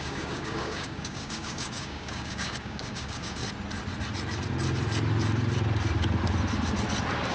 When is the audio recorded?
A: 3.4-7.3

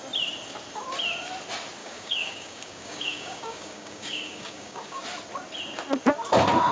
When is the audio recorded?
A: 0.0-1.8; 5.0-6.7

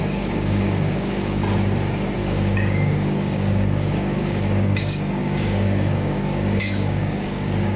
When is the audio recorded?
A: 1.4-2.2

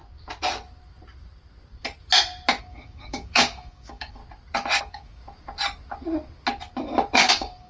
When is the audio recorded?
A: 0.0-2.6; 4.2-4.8; 5.2-7.3

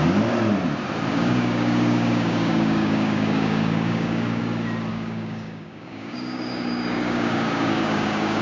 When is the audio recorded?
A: 0.0-1.1; 4.4-4.9